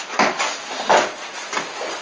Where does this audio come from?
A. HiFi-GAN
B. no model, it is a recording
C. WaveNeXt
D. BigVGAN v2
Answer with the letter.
B